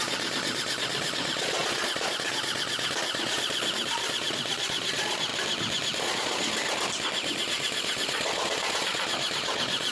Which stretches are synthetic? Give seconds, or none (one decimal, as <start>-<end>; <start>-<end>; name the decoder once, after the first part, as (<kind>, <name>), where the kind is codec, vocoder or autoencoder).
0.0-5.3 (vocoder, Vocos); 6.0-6.5; 7.3-9.9